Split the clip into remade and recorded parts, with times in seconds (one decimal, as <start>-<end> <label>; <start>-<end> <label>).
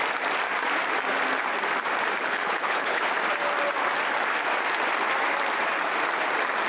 0.0-2.2 recorded; 2.2-3.0 remade; 3.0-6.7 recorded